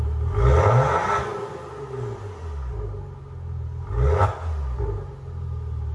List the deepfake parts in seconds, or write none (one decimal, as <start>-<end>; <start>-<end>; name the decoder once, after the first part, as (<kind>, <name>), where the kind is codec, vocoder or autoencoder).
none